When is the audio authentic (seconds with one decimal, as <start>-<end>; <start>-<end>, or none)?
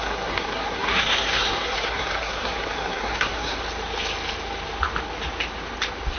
3.6-6.2